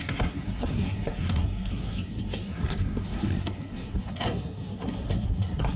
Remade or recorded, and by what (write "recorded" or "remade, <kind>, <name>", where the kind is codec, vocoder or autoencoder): remade, codec, SNAC